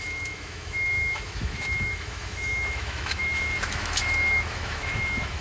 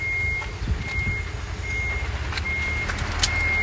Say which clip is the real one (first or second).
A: second